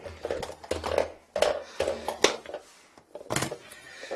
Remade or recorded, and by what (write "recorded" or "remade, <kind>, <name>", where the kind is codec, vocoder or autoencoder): recorded